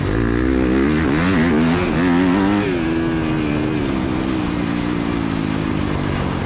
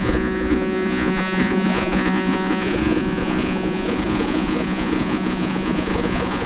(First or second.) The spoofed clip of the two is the second